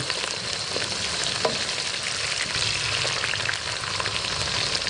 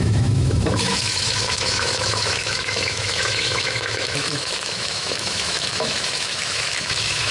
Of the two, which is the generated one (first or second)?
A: second